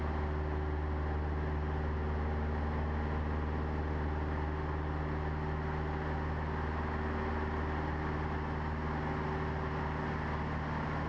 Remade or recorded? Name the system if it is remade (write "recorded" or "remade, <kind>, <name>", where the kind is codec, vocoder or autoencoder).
recorded